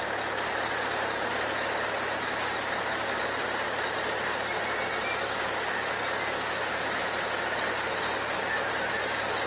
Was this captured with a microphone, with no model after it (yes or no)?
yes